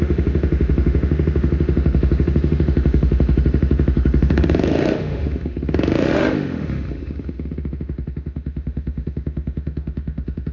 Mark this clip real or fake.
fake